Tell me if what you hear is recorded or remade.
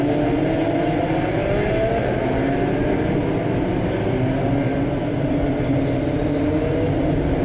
recorded